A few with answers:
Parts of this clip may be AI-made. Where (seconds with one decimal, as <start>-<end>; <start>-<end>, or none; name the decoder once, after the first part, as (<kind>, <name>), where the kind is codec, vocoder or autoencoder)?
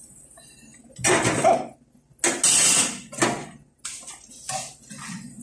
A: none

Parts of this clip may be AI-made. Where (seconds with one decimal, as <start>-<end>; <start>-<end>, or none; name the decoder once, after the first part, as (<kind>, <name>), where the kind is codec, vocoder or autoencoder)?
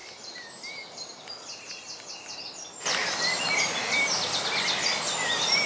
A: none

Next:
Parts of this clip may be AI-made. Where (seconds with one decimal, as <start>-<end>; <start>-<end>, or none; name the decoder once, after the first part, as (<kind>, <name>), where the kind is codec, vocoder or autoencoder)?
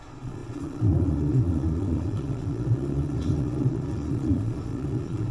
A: 0.0-5.3 (vocoder, Vocos)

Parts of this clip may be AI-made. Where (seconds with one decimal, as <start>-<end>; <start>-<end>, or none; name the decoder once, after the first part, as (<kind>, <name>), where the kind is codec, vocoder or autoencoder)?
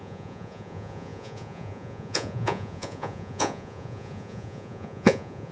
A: 0.0-5.5 (vocoder, Vocos)